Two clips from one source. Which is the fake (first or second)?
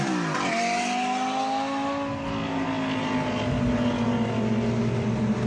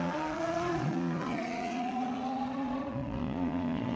second